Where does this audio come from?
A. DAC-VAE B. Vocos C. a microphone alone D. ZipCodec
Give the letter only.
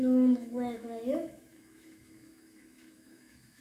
A